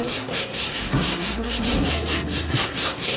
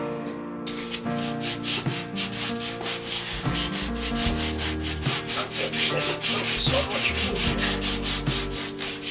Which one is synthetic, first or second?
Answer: first